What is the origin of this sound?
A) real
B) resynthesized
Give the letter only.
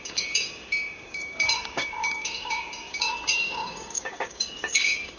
B